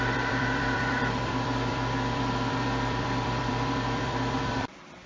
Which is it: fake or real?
fake